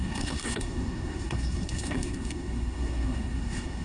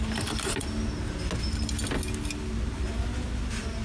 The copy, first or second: first